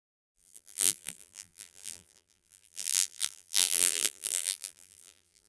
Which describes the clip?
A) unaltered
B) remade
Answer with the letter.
B